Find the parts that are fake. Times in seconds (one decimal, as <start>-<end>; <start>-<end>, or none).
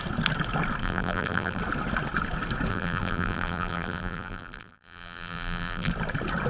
0.8-1.6; 2.7-5.9